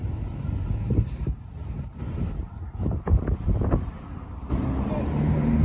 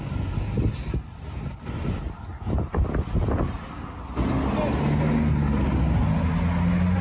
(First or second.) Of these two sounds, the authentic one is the second